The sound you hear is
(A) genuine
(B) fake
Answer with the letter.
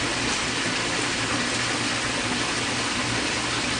A